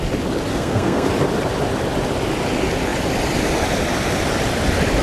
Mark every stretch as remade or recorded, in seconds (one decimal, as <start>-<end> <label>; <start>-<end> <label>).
0.0-0.5 recorded; 0.5-1.1 remade; 1.1-5.0 recorded